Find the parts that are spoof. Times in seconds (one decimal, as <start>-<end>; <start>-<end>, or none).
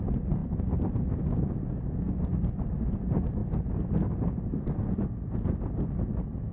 none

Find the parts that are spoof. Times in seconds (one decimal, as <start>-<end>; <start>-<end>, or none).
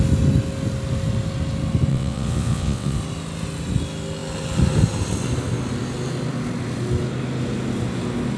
1.9-3.0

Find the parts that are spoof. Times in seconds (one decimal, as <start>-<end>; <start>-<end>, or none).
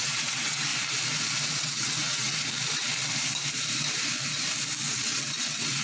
0.0-0.7; 1.6-2.3; 4.9-5.8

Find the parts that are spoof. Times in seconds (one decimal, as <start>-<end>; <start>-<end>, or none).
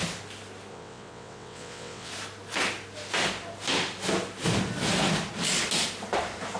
0.7-2.1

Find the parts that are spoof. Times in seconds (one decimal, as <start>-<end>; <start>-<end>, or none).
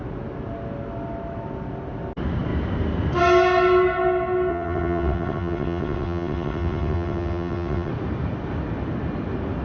4.5-7.9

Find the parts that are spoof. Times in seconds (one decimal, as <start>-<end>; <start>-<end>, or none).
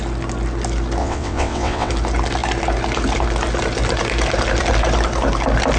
1.0-1.9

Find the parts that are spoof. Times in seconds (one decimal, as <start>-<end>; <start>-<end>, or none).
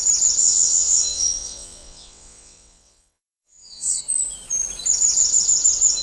0.4-4.0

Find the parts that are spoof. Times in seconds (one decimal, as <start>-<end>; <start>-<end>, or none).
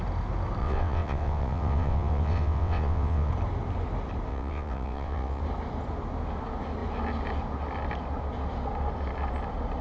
0.6-3.3; 4.3-5.4